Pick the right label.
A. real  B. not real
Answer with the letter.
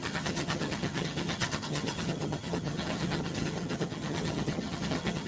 B